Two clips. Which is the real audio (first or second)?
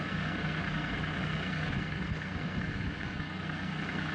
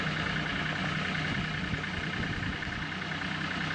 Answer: second